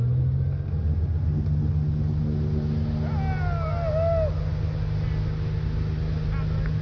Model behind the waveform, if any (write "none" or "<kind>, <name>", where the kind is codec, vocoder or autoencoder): none